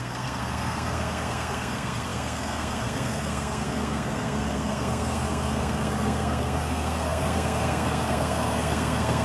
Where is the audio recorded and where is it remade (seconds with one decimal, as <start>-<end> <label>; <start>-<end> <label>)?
0.0-9.2 remade